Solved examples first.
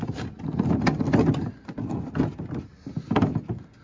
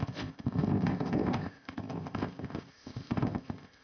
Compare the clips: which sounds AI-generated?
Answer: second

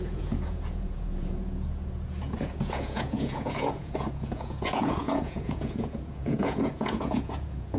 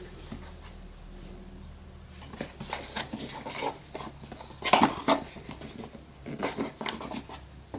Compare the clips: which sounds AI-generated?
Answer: first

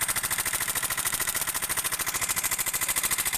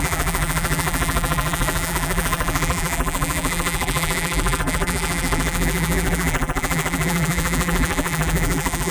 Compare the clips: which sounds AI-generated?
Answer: second